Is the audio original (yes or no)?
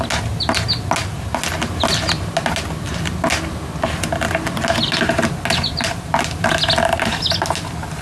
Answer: yes